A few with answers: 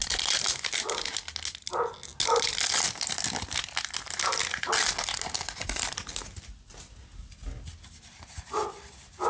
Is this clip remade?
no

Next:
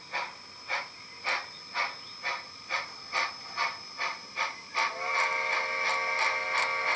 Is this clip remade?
no